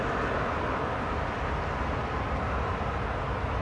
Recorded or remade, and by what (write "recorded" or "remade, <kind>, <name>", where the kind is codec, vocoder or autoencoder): recorded